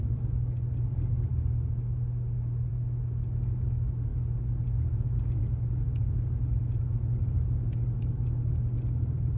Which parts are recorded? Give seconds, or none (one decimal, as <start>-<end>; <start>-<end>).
0.0-9.4